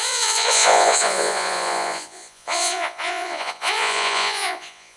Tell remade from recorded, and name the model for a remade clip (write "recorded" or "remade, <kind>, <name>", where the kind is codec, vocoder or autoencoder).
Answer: remade, vocoder, Vocos